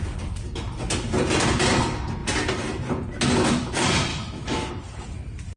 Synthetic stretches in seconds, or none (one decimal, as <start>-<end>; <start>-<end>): 4.1-4.7